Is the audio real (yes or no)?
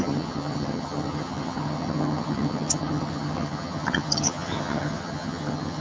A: no